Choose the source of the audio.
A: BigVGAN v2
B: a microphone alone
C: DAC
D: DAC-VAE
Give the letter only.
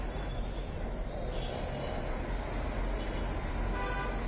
B